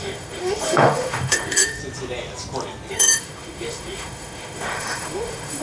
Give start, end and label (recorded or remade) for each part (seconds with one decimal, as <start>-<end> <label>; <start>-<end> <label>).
0.0-1.8 remade; 1.8-2.9 recorded; 2.9-5.6 remade